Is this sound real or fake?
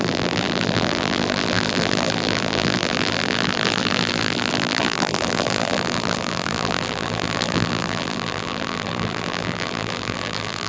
fake